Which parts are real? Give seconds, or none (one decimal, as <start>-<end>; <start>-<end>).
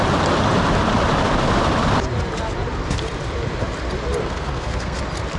0.0-4.2; 5.0-5.4